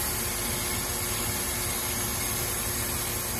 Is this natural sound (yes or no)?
yes